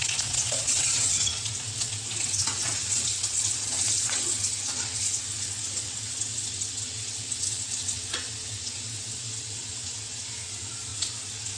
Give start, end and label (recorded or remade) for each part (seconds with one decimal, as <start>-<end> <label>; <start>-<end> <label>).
0.0-11.6 remade